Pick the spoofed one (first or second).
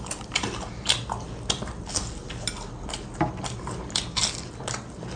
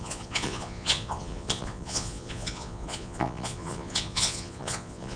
second